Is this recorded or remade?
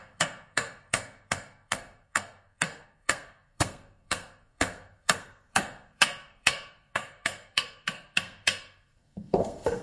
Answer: remade